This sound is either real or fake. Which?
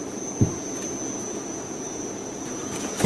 real